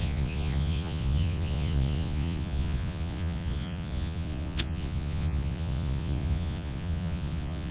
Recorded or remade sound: remade